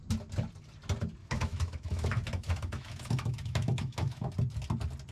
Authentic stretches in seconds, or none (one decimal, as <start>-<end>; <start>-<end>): 0.0-1.2; 4.3-5.1